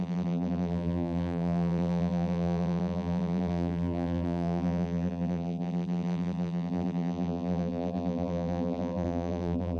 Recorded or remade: remade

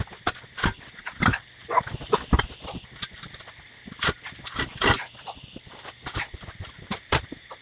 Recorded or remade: remade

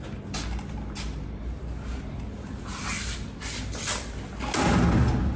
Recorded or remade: recorded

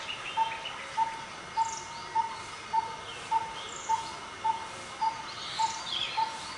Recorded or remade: recorded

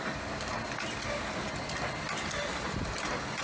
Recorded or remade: recorded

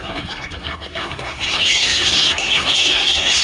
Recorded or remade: remade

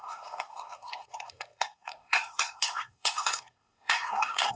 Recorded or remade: remade